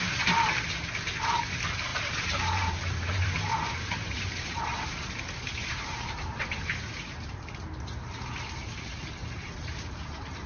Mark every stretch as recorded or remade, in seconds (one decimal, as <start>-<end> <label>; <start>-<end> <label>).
0.0-1.9 recorded; 1.9-4.6 remade; 4.6-5.6 recorded; 5.6-7.4 remade; 7.4-9.2 recorded; 9.2-10.5 remade